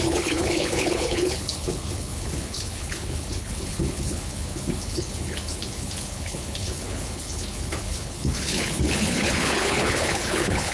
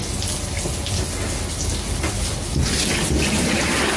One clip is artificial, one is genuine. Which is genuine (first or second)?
second